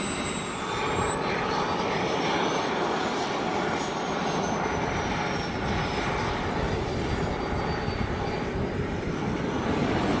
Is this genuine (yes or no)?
yes